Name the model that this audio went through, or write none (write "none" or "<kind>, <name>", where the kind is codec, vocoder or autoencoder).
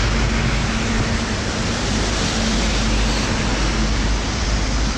none